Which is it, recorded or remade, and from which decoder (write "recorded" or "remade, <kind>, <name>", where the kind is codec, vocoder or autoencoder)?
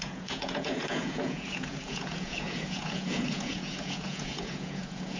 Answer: remade, vocoder, Vocos